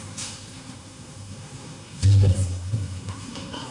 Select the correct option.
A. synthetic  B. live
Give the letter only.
A